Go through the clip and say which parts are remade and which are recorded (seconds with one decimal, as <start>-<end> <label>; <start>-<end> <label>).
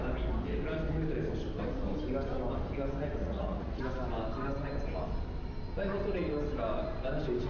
0.0-3.2 recorded; 3.2-3.8 remade; 3.8-7.5 recorded